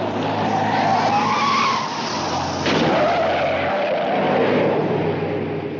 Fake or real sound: real